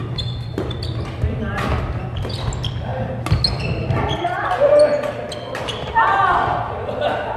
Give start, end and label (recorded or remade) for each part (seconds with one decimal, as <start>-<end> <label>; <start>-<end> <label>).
0.0-7.4 recorded